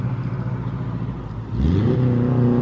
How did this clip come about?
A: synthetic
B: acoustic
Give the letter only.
B